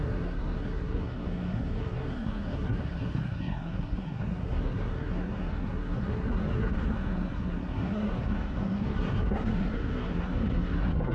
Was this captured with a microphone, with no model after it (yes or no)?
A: no